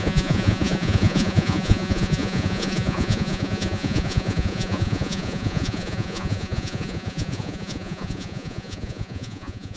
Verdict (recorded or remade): remade